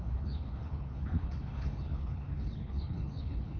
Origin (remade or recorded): remade